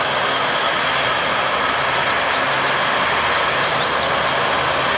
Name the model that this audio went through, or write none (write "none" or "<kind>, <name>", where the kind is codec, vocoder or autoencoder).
none